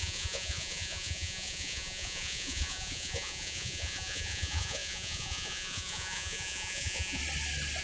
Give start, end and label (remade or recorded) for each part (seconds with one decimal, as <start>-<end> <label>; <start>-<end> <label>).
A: 0.0-7.2 remade; 7.2-7.8 recorded